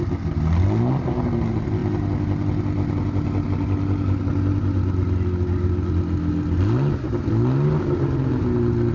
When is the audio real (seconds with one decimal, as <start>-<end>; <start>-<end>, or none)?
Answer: 0.0-8.9